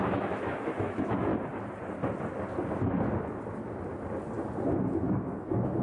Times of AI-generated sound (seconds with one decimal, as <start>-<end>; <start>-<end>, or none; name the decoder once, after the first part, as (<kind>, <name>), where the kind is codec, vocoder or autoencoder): 0.0-1.3 (autoencoder, DAC-VAE); 4.8-5.8